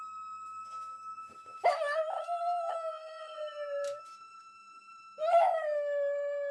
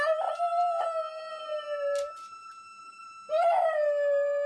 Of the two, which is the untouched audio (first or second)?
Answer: second